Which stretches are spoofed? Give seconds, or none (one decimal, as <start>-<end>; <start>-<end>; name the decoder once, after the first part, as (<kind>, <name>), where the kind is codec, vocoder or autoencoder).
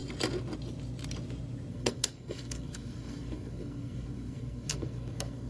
1.7-5.5 (codec, SNAC)